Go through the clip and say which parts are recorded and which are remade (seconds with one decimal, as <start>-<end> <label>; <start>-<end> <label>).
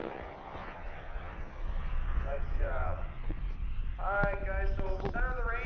0.0-3.4 remade; 3.4-5.7 recorded